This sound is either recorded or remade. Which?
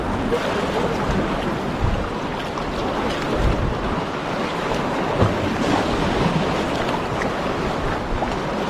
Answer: recorded